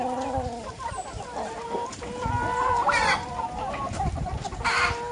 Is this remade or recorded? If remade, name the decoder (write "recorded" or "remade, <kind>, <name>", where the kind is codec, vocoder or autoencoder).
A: recorded